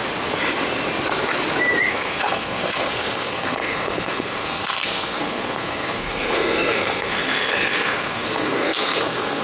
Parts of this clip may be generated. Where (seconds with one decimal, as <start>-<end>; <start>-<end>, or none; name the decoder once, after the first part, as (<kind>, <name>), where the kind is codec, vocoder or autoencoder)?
1.9-9.4 (codec, SNAC)